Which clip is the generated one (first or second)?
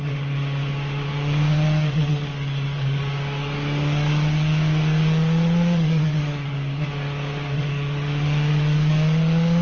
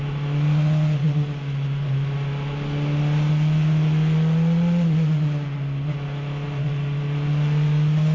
first